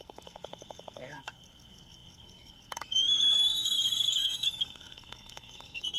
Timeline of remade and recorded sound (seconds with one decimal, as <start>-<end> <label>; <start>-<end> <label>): 0.0-6.0 remade